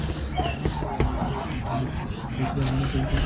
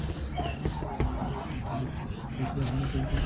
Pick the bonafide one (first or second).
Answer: first